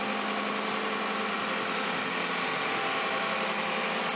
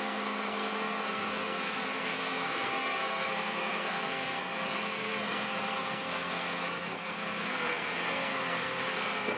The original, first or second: first